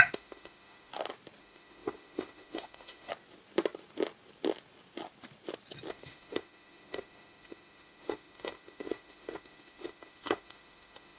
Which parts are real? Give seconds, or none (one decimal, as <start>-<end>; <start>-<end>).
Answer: 0.9-1.4; 3.1-5.9